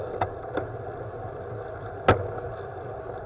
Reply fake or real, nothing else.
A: real